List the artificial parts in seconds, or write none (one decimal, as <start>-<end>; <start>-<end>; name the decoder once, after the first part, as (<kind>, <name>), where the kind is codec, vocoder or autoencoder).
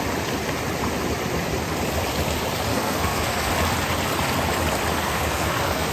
2.7-3.5 (codec, SNAC); 4.9-5.9